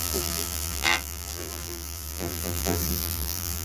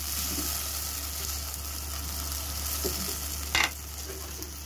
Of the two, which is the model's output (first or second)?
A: first